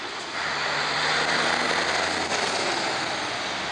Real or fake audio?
real